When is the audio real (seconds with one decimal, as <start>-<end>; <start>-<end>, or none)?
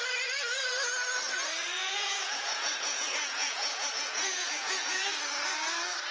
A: 0.0-1.8; 5.0-6.1